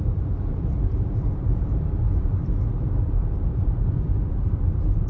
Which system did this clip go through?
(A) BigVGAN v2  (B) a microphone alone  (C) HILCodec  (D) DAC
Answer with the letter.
A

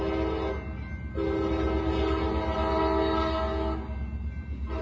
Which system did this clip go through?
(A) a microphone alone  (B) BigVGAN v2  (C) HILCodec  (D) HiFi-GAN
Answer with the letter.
A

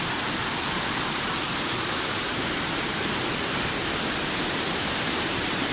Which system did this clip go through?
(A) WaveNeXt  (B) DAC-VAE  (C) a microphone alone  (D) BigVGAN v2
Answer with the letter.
D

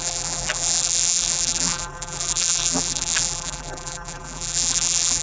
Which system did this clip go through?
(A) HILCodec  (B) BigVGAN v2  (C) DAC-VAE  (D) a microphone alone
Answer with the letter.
B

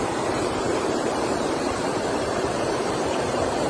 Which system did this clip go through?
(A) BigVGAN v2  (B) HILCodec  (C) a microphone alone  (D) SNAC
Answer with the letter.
A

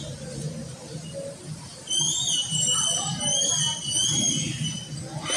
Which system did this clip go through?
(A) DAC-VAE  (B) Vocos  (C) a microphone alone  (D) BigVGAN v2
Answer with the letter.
C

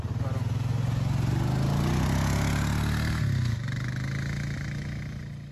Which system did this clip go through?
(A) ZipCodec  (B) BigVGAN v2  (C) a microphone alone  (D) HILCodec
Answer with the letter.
C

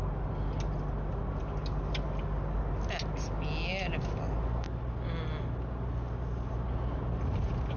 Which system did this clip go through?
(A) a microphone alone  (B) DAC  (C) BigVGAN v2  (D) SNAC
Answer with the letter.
A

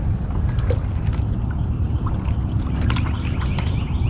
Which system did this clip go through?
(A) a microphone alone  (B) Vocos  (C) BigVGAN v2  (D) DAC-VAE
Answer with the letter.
A